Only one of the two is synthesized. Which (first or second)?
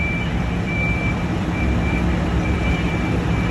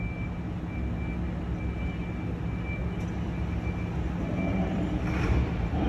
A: first